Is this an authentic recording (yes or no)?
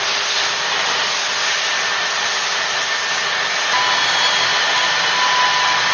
yes